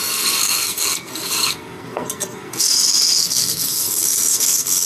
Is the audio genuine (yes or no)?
no